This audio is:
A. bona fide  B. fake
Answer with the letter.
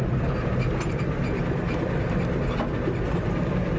A